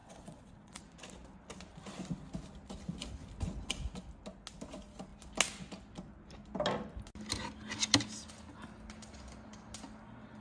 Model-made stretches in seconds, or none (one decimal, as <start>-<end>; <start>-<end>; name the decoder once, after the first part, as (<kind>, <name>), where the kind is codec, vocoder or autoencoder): 0.0-0.8 (vocoder, WaveNeXt)